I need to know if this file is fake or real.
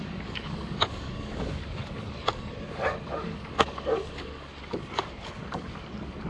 fake